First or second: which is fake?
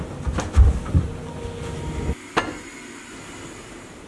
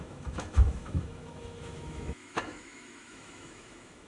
second